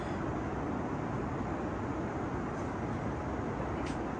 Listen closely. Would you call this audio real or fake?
real